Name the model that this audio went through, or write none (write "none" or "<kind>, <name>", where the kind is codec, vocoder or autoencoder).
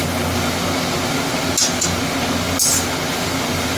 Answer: none